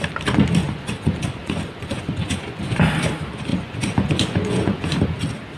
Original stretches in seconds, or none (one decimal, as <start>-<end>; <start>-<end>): 0.0-0.6; 2.8-3.5; 5.0-5.6